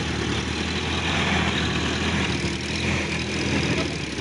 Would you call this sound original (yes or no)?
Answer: yes